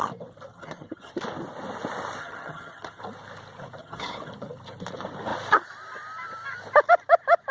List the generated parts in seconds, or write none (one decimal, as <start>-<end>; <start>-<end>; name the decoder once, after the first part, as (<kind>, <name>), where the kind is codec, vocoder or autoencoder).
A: 0.5-1.1 (vocoder, HiFi-GAN); 2.2-3.0; 3.8-4.3